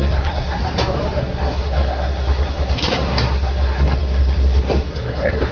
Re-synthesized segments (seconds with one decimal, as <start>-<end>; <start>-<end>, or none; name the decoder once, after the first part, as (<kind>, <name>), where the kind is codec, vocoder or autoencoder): 0.0-0.6 (codec, SNAC); 1.2-5.5